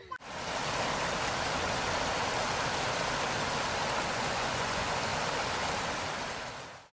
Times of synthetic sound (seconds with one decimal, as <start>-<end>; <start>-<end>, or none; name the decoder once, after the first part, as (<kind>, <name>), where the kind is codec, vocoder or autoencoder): 4.1-5.1 (vocoder, Vocos)